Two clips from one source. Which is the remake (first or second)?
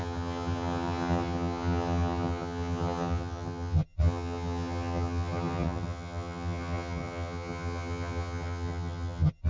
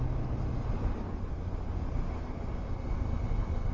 first